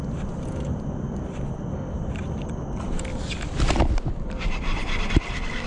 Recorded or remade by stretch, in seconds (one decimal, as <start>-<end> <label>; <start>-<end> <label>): 0.0-2.2 remade; 2.2-3.5 recorded; 3.5-5.7 remade